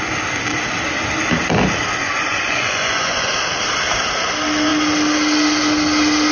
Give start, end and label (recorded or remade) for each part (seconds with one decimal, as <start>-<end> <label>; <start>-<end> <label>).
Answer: 0.0-2.0 recorded; 2.0-3.3 remade; 3.3-6.3 recorded